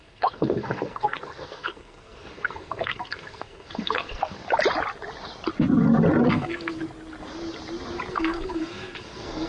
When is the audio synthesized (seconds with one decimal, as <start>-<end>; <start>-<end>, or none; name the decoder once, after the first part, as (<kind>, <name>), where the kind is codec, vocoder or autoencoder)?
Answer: 0.0-4.4 (codec, SNAC); 6.3-6.8; 8.1-9.5